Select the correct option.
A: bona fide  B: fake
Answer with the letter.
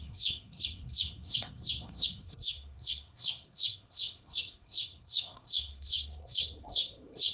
B